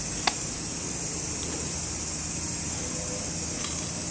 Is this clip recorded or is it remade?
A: recorded